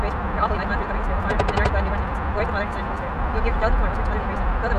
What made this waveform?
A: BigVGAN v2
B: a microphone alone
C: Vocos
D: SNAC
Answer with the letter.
A